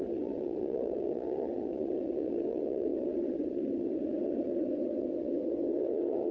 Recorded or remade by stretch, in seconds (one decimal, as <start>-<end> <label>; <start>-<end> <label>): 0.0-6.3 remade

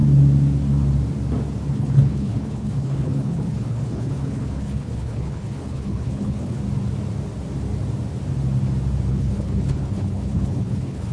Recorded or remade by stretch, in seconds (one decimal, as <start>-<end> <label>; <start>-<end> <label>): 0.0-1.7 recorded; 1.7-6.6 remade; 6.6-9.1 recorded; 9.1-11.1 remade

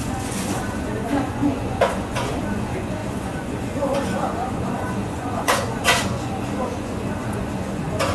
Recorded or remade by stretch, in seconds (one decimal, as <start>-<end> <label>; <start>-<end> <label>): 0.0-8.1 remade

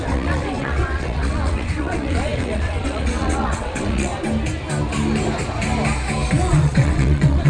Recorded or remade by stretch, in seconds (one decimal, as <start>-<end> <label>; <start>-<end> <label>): 0.0-4.1 remade; 4.1-6.5 recorded; 6.5-7.5 remade